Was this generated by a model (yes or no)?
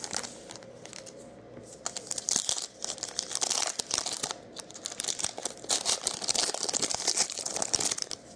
no